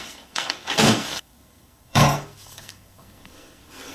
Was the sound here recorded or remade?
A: remade